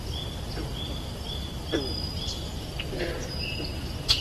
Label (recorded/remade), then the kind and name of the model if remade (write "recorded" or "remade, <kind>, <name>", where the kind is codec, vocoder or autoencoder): recorded